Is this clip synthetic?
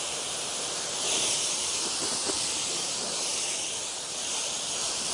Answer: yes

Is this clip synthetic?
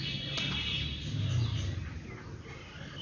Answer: no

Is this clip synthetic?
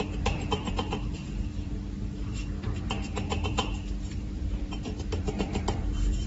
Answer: yes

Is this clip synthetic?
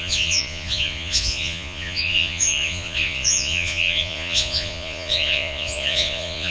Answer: yes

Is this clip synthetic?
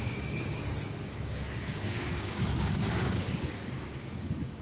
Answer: yes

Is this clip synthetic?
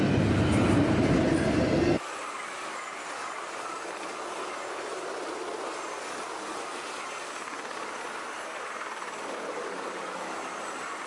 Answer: no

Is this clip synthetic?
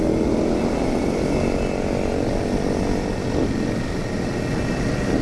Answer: no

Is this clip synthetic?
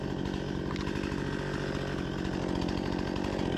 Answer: no